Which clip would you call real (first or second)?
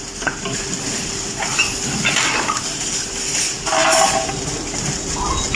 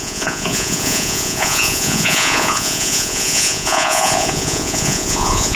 first